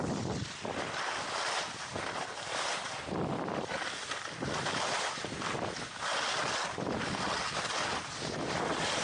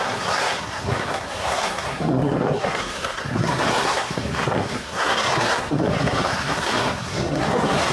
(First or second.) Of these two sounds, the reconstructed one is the second